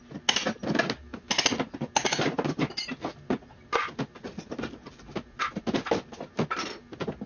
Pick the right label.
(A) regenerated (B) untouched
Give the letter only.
B